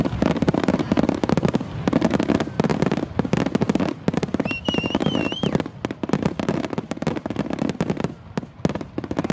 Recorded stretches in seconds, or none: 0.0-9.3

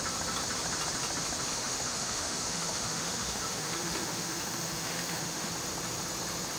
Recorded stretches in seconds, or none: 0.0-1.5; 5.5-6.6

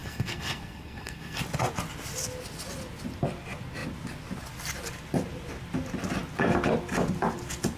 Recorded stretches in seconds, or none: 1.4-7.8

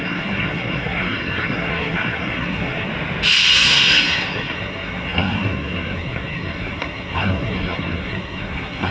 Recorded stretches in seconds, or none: 2.9-3.5